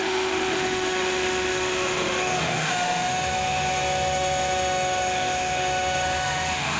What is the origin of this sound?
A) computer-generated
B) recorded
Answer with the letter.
A